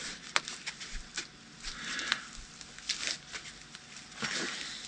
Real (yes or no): yes